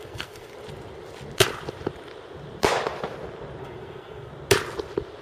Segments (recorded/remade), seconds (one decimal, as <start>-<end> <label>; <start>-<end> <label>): 0.0-0.5 remade; 0.5-3.6 recorded; 3.6-4.3 remade; 4.3-5.2 recorded